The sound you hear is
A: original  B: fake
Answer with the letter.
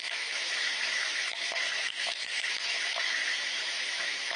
B